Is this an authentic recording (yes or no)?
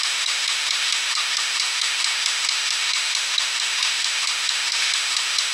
no